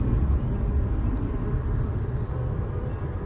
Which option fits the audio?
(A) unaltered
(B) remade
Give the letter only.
A